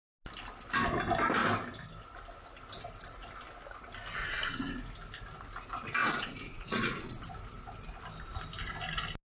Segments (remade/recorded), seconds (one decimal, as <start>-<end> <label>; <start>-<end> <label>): 0.0-4.2 recorded; 4.2-4.7 remade; 4.7-6.0 recorded; 6.0-7.2 remade; 7.2-9.3 recorded